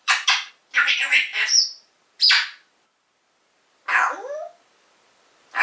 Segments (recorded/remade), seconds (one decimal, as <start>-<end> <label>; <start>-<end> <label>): 0.0-0.5 remade; 0.5-5.6 recorded